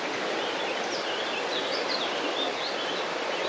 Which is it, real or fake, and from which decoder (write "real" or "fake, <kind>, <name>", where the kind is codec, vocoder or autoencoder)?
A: real